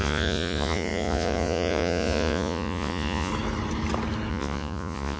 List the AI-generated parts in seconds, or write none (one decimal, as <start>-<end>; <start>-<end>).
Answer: 0.0-3.3; 4.3-5.2

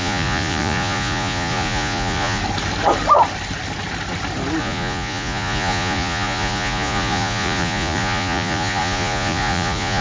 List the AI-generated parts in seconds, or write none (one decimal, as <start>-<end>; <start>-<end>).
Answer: 0.0-2.4; 4.6-10.0

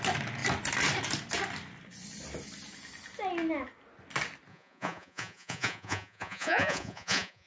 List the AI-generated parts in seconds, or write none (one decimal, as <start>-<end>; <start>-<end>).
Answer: 4.5-7.5